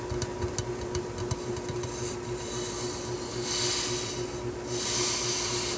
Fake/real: real